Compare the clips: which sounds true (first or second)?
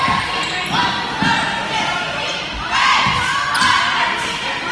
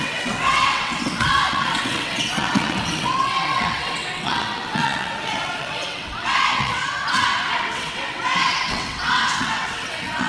first